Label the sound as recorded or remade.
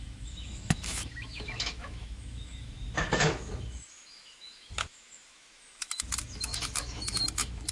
remade